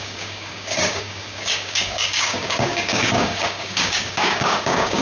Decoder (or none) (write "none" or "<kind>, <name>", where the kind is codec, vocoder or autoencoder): codec, DAC